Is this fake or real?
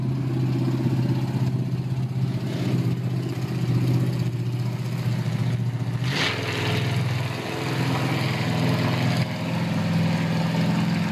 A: real